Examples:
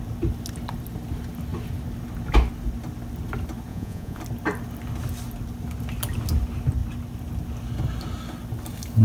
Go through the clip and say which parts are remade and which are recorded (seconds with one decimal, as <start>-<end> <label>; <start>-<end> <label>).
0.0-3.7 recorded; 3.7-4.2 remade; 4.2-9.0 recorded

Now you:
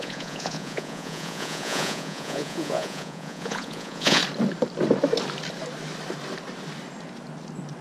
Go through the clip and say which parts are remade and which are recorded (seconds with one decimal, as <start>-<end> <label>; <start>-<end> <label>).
0.0-4.2 remade; 4.2-7.8 recorded

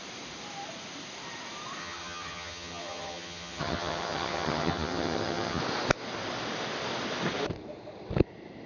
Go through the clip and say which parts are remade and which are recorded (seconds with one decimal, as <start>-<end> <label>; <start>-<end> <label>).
0.0-1.8 recorded; 1.8-5.6 remade; 5.6-8.7 recorded

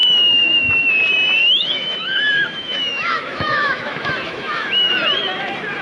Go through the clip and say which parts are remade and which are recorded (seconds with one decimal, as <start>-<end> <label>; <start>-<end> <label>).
0.0-0.9 remade; 0.9-1.4 recorded; 1.4-4.9 remade; 4.9-5.8 recorded

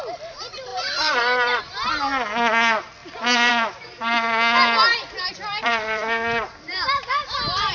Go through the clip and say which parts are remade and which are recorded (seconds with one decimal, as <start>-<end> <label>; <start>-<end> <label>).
0.0-0.7 recorded; 0.7-1.6 remade; 1.6-3.0 recorded; 3.0-3.5 remade; 3.5-4.9 recorded; 4.9-7.7 remade

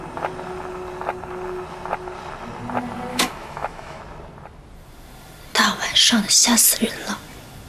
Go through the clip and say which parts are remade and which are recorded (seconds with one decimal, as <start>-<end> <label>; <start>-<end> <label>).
0.0-3.1 recorded; 3.1-4.0 remade; 4.0-7.7 recorded